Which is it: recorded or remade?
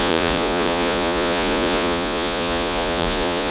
remade